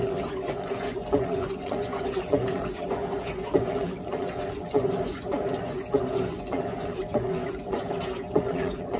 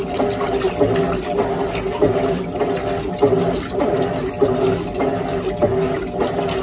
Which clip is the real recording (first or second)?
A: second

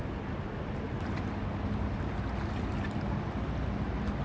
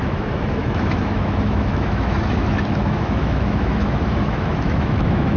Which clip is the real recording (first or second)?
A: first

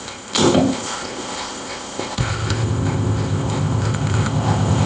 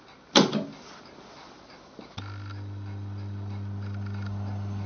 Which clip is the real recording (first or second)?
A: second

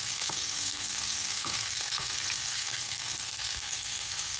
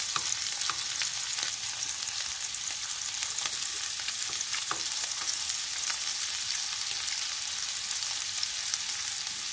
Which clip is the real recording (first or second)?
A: second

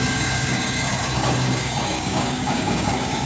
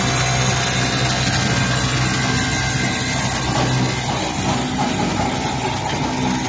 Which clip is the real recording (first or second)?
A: second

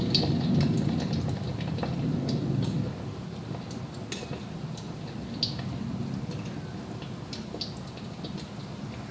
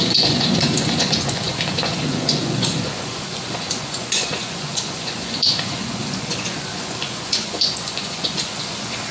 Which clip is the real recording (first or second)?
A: first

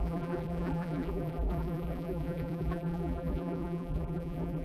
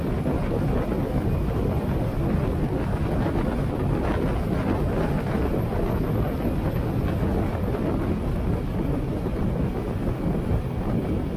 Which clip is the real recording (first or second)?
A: second